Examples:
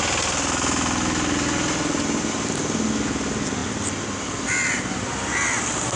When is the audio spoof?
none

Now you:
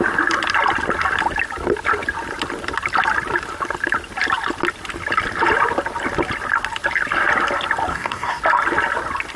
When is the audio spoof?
7.9-8.4 (codec, SNAC)

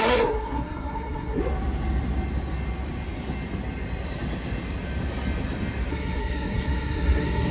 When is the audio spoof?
0.0-1.4 (codec, SNAC); 5.9-7.5

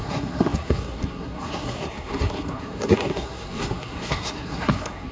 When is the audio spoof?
0.0-5.1 (codec, SNAC)

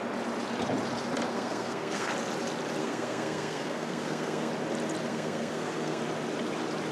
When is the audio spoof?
1.3-2.1 (codec, SNAC); 2.8-4.5; 5.1-6.0